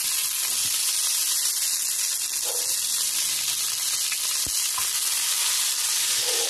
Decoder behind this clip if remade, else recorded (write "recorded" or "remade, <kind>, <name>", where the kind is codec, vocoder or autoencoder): recorded